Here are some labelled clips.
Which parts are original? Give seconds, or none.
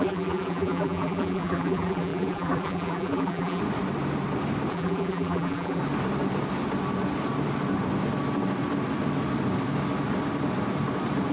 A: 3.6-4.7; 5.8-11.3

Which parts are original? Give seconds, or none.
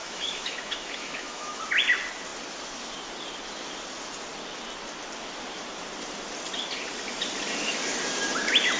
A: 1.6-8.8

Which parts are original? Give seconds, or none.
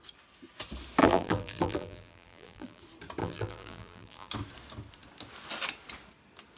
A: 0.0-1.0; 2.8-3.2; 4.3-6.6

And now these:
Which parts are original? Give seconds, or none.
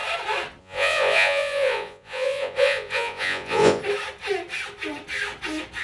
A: 0.0-0.6; 3.8-5.8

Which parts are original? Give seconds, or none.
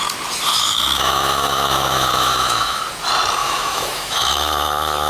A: 0.0-0.5; 2.8-3.4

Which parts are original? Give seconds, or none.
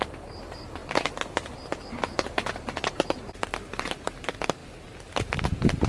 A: 4.6-5.9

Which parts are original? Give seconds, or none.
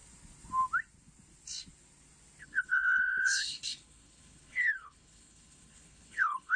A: 0.0-2.4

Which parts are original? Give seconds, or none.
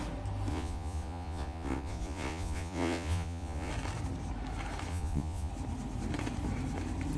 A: 0.0-0.5; 3.7-4.9; 5.5-7.2